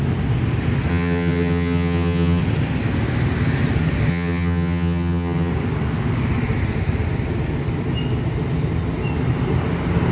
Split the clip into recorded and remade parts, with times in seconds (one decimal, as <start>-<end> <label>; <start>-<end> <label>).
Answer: 0.0-0.9 recorded; 0.9-2.4 remade; 2.4-4.1 recorded; 4.1-5.5 remade; 5.5-10.1 recorded